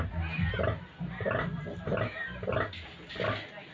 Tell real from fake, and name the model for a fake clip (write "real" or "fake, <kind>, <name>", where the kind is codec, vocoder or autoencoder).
real